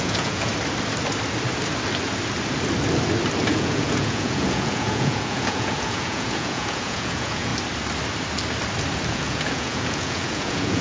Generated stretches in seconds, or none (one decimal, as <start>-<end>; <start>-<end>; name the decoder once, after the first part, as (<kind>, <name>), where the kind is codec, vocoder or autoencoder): 0.0-0.5 (vocoder, Vocos); 3.5-7.5; 9.1-10.8